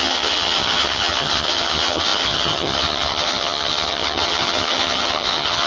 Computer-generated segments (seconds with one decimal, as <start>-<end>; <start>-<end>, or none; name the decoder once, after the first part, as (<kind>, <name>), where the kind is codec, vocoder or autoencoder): 0.0-5.7 (vocoder, HiFi-GAN)